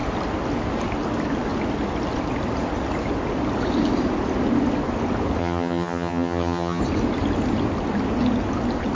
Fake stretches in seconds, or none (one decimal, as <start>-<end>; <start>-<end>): 5.4-6.8